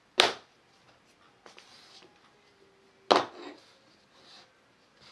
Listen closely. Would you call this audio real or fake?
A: real